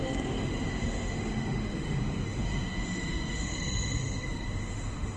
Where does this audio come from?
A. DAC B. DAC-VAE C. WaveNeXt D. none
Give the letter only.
B